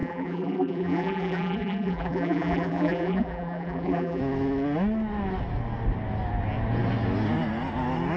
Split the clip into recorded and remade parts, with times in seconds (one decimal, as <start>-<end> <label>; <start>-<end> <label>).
0.0-4.2 remade; 4.2-8.2 recorded